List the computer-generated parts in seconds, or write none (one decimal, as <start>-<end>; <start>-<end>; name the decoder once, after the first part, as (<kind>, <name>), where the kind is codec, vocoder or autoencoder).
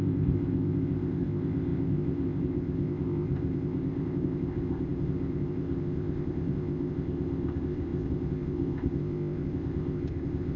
0.0-10.6 (codec, ZipCodec)